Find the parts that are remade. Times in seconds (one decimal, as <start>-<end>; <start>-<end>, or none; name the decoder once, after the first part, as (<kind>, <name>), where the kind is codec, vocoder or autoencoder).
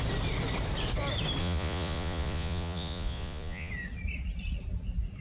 1.4-3.7 (vocoder, Vocos)